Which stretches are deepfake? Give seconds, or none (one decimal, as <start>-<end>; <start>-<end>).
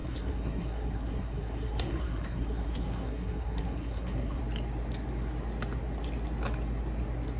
0.0-4.4